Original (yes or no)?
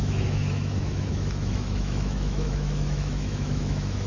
no